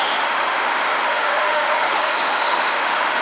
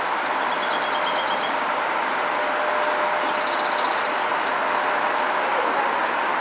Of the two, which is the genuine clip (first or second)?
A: second